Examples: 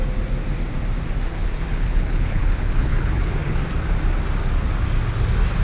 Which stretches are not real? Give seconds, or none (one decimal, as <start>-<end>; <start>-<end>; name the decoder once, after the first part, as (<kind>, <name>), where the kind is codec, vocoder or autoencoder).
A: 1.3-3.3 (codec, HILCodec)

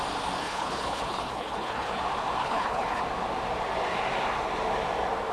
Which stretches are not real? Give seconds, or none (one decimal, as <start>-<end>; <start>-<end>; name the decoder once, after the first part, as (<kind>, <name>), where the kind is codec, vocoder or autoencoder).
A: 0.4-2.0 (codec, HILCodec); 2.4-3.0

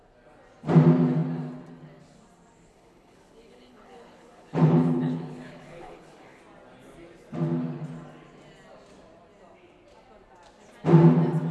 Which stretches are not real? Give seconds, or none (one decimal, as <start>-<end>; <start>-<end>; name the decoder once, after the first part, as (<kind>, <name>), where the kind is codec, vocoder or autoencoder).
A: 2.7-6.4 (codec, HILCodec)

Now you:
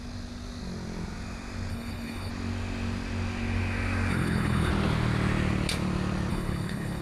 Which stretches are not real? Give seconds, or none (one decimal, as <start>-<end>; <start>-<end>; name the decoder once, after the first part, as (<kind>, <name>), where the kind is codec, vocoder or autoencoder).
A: 1.7-2.3 (codec, HILCodec); 4.1-4.7; 6.3-7.0

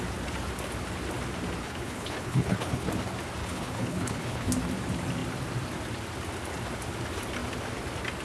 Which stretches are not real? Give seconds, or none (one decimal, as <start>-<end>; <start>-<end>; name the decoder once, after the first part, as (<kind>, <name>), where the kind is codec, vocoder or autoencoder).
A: 1.6-2.9 (codec, HILCodec); 3.4-4.5